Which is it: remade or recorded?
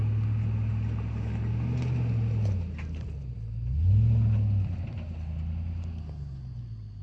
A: recorded